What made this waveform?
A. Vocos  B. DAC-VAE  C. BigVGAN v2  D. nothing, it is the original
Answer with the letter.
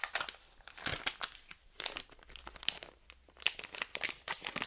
C